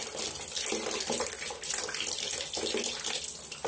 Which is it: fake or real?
real